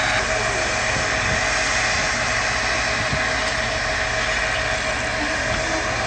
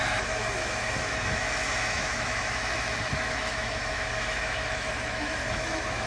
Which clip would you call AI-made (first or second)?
second